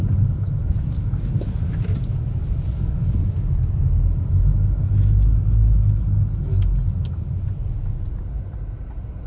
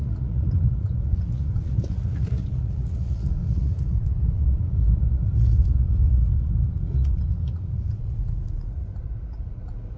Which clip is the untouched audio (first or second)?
first